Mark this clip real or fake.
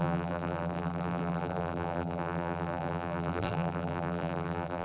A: fake